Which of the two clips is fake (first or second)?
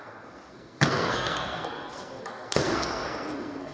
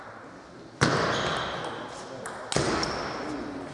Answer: first